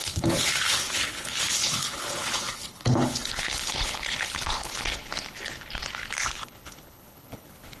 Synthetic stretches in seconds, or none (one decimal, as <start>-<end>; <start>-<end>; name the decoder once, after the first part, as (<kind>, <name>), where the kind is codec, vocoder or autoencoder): 0.0-7.8 (codec, HILCodec)